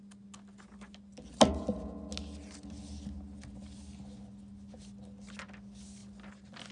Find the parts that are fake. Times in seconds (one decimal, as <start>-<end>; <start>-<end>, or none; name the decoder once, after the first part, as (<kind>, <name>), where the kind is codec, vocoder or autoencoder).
none